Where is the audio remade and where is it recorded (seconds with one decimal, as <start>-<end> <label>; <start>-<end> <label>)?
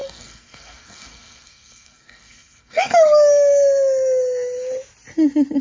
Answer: 0.0-3.0 remade; 3.0-5.6 recorded